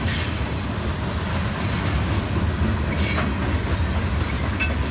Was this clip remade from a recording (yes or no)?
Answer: no